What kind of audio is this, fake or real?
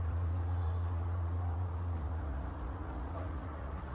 fake